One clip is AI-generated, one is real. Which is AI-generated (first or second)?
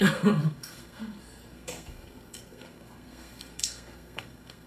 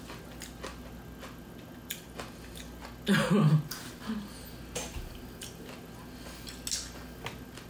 first